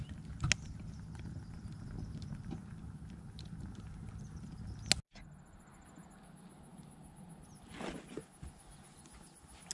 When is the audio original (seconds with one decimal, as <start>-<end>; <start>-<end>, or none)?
0.0-9.7

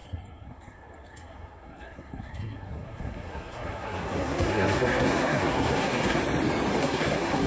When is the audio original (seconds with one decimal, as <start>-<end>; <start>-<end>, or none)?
6.2-6.8

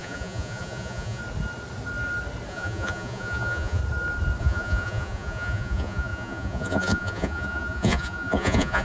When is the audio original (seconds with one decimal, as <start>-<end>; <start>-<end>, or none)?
1.2-2.5; 3.8-4.4

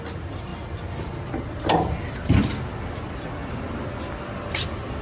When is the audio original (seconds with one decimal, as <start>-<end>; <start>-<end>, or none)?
0.0-5.0

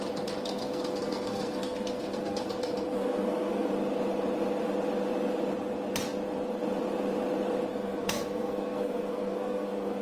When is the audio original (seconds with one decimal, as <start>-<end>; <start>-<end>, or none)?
0.0-0.4; 3.7-7.7